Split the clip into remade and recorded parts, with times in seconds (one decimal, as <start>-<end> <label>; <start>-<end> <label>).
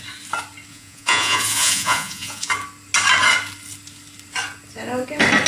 0.0-0.7 recorded; 0.7-2.5 remade; 2.5-5.5 recorded